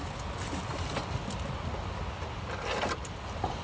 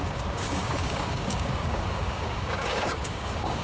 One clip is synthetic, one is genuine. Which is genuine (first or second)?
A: first